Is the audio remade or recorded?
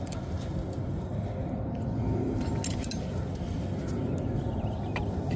recorded